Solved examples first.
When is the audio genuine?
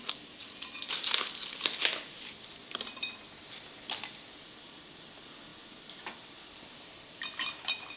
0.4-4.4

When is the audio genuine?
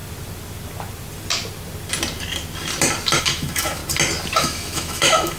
0.0-3.2; 3.8-4.4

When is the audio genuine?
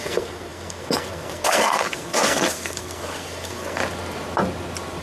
3.8-5.0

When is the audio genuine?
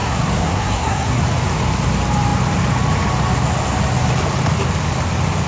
1.2-5.5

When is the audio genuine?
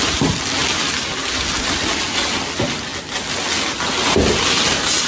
0.0-5.1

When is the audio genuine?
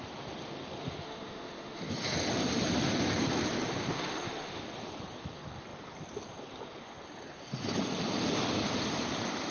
0.0-0.8; 1.8-3.9; 4.6-9.5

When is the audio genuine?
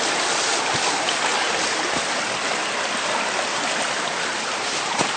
0.0-5.2